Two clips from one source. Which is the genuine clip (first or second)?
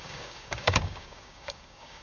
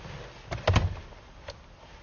second